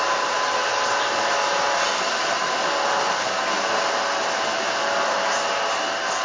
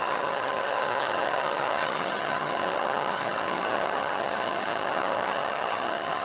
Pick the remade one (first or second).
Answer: second